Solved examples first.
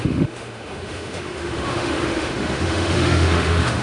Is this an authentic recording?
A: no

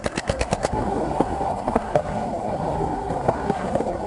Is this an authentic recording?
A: no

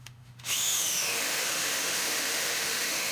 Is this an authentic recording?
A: no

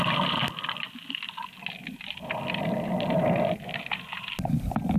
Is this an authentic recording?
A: yes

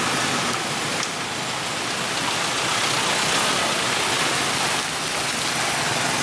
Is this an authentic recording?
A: yes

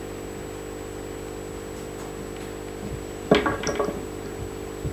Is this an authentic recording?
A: yes